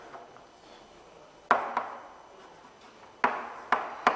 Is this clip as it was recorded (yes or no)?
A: yes